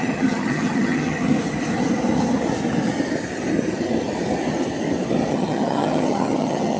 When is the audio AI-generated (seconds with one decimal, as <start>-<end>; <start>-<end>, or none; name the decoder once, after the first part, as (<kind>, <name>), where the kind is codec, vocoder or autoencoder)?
0.0-1.2 (vocoder, HiFi-GAN); 5.3-6.8